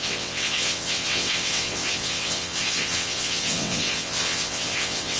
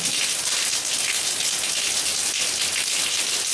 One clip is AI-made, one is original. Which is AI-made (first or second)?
first